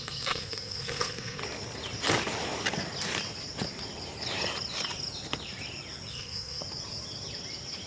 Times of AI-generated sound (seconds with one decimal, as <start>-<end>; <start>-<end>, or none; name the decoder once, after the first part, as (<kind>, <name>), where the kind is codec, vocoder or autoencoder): 0.0-1.4 (codec, SNAC); 6.1-6.6